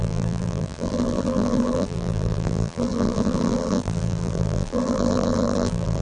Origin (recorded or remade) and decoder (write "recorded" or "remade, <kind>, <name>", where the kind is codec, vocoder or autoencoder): remade, vocoder, BigVGAN v2